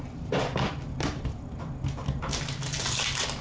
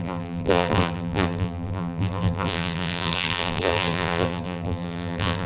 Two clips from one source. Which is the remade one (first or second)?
second